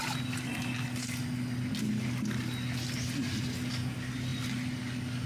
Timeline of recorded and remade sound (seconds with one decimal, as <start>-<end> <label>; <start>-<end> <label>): 0.0-5.3 recorded